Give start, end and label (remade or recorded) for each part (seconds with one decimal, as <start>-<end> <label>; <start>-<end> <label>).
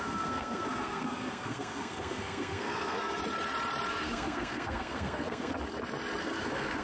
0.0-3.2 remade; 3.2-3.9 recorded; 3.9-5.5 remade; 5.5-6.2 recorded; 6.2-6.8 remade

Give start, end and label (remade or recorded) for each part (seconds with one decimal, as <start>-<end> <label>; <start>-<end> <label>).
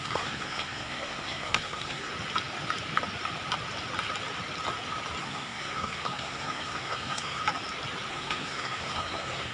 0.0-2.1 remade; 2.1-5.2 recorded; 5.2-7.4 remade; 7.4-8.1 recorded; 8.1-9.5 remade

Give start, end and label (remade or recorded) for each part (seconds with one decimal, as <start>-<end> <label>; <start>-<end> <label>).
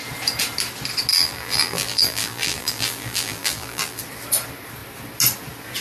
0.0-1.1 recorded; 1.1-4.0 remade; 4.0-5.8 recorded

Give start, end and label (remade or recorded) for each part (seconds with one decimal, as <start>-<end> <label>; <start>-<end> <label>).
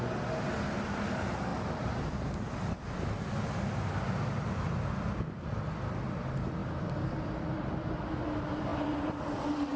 0.0-6.6 recorded; 6.6-7.7 remade; 7.7-9.8 recorded